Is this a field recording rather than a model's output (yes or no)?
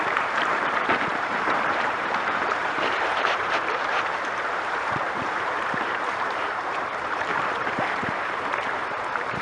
no